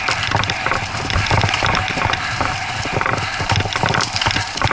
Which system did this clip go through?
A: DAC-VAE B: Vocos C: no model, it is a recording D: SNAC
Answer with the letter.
C